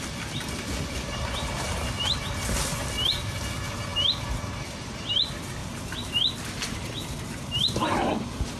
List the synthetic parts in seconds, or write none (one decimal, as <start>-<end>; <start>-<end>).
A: none